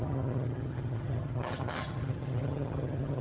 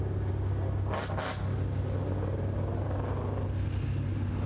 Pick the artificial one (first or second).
first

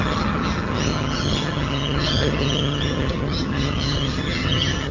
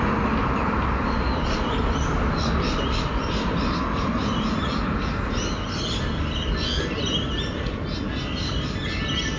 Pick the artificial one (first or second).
first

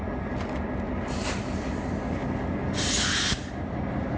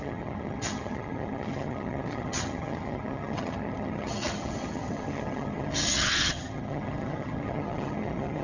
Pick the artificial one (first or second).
second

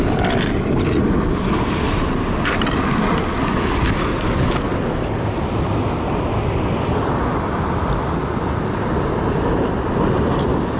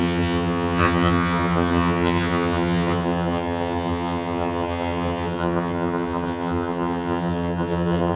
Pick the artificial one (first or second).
second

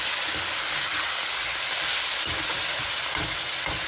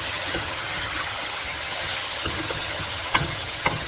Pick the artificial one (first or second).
second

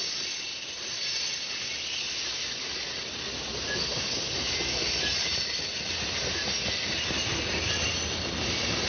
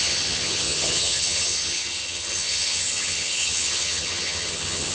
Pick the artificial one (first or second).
second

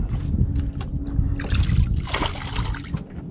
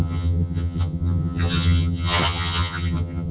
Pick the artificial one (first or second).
second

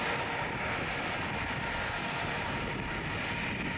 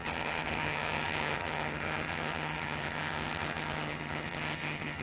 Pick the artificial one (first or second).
second